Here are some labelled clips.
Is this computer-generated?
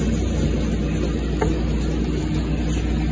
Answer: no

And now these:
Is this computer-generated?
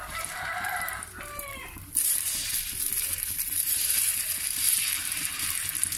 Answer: yes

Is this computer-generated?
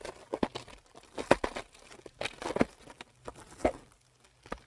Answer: no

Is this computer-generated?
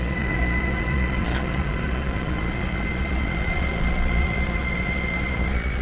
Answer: yes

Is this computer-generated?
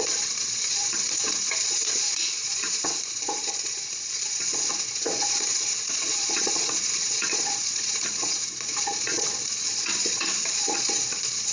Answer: yes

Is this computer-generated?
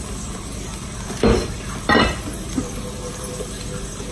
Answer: yes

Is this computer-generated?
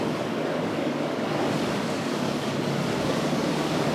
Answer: yes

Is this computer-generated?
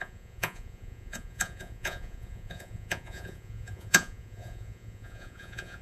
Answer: yes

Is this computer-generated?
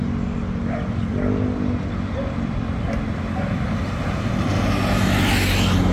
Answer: no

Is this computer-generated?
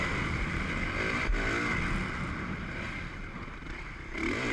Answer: no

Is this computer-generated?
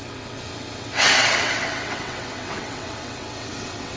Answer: yes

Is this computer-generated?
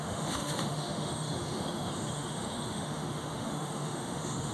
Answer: yes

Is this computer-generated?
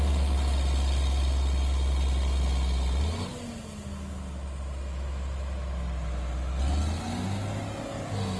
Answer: no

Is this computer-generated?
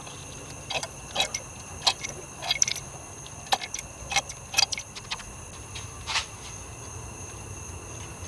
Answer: no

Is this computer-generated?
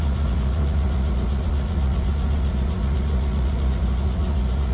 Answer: yes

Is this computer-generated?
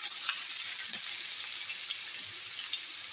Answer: no